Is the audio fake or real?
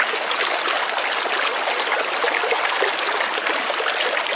real